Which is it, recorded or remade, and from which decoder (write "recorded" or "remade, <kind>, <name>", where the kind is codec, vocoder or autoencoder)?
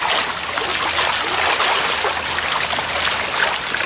recorded